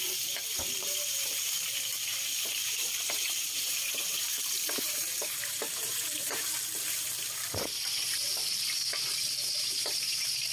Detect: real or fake fake